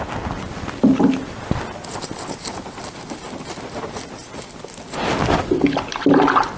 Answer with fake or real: real